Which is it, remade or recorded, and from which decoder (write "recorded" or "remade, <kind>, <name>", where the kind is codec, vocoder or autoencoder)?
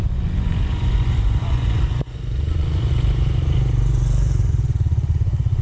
remade, vocoder, Vocos